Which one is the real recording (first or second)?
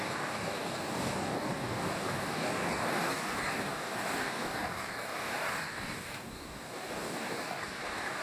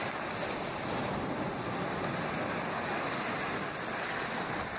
second